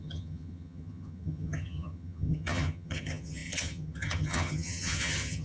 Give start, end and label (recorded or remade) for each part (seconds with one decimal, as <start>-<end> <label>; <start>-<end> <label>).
0.0-5.4 remade